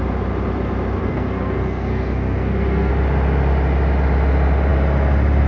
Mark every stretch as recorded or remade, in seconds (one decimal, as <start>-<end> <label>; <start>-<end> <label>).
0.0-1.0 recorded; 1.0-2.9 remade; 2.9-5.5 recorded